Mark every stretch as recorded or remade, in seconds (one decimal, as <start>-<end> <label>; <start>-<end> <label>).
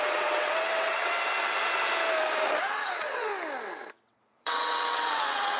0.0-1.1 remade; 1.1-2.6 recorded; 2.6-3.3 remade; 3.3-3.9 recorded; 3.9-5.6 remade